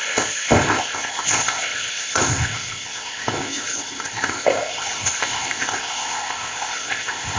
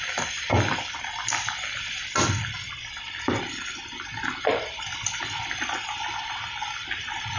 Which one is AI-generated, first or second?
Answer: first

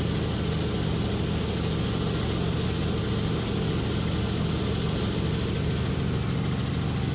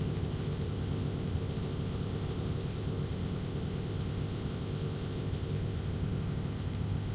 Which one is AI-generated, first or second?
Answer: second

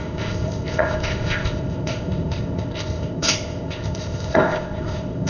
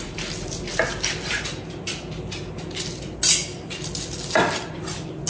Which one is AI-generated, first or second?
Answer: first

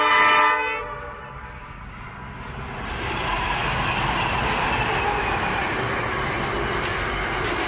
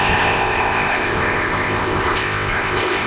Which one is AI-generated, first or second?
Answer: second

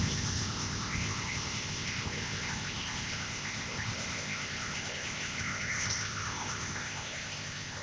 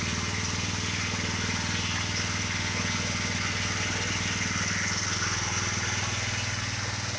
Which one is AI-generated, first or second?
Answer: first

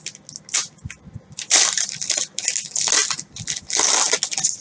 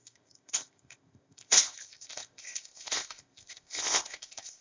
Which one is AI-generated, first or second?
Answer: second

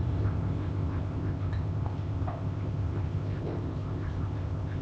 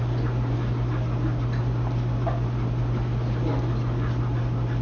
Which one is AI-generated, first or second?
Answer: first